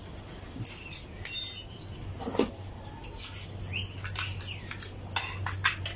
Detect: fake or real real